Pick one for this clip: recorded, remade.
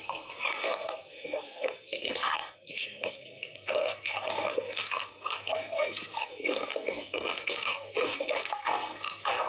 remade